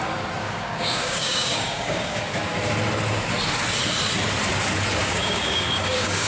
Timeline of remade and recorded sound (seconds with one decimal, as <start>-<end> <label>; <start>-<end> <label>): 0.0-0.4 recorded; 0.4-2.2 remade; 2.2-5.0 recorded; 5.0-6.3 remade